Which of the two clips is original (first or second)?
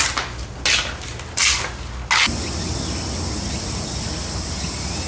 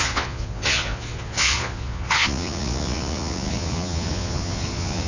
first